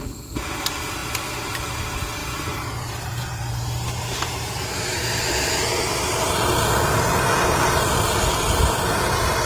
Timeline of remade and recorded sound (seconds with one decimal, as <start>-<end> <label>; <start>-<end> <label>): 0.0-1.0 recorded; 1.0-1.8 remade; 1.8-2.2 recorded; 2.2-5.5 remade; 5.5-9.5 recorded